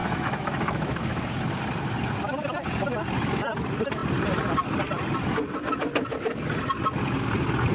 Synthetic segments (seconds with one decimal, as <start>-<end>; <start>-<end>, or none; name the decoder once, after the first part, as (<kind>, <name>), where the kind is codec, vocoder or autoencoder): 0.0-1.2 (autoencoder, DAC-VAE)